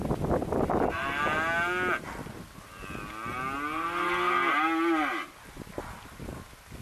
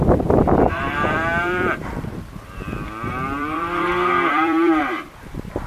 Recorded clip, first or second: first